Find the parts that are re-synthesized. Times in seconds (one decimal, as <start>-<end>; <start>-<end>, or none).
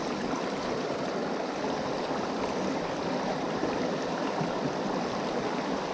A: 1.2-4.7